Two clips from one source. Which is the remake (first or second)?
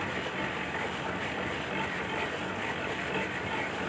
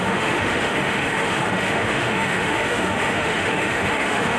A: second